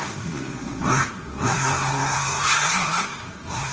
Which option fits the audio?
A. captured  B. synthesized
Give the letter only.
B